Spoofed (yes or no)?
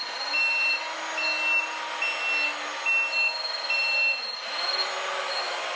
no